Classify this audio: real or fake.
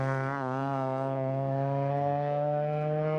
fake